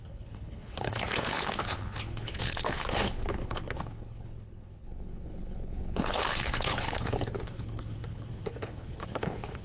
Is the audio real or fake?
fake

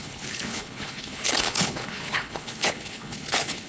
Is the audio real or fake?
fake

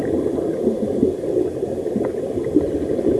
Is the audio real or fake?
real